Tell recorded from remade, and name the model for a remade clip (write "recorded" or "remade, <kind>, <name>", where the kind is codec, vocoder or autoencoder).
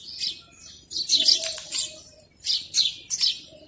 recorded